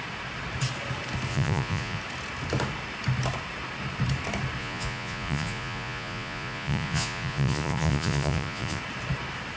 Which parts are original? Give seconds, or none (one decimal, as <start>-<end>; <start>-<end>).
0.0-1.3; 2.0-4.6; 8.8-9.6